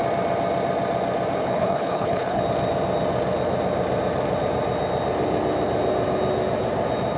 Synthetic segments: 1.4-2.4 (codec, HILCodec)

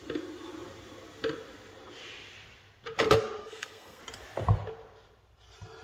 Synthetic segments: 3.4-4.0 (codec, SNAC)